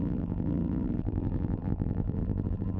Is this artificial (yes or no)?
yes